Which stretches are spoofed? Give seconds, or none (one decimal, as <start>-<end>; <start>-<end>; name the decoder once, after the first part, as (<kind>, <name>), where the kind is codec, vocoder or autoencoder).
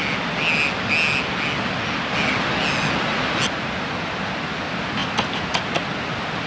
none